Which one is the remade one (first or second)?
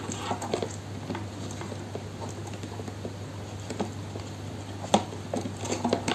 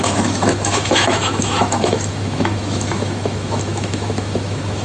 second